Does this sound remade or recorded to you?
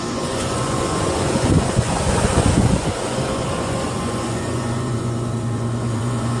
remade